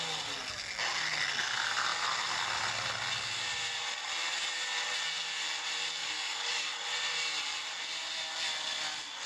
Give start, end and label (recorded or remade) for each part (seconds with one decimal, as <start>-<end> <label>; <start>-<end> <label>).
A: 0.0-6.0 recorded; 6.0-6.7 remade; 6.7-9.3 recorded